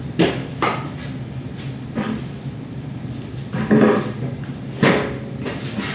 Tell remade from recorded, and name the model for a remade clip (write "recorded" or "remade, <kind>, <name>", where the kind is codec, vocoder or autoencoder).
recorded